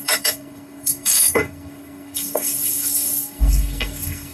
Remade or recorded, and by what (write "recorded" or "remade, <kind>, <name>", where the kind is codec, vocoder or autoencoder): remade, codec, SNAC